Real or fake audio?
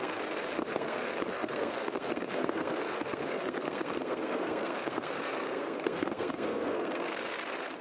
fake